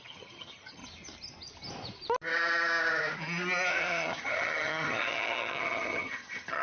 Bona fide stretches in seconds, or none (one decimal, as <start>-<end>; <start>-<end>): 0.8-3.7